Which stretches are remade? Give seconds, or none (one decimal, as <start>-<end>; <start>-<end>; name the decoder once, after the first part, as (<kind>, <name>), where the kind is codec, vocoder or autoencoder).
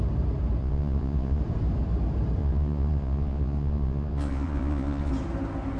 0.6-1.4 (vocoder, Vocos); 2.4-5.1